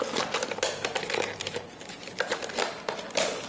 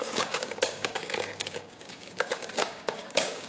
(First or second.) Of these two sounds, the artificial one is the second